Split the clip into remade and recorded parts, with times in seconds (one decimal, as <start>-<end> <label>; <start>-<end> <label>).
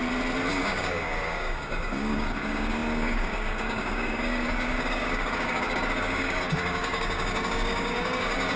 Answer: 0.0-0.5 recorded; 0.5-8.6 remade